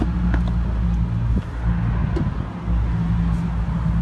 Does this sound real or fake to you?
real